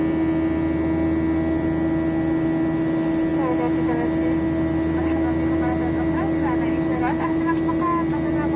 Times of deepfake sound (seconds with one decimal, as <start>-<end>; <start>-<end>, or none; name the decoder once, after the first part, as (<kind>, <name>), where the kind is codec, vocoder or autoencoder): none